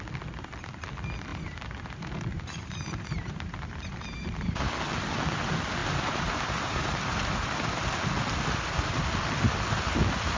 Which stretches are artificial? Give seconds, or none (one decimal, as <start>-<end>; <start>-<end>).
1.3-4.6; 5.8-6.9